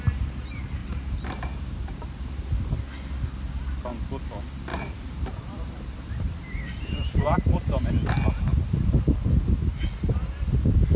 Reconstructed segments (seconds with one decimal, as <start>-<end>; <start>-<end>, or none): 0.8-2.3; 4.7-7.9; 8.5-9.1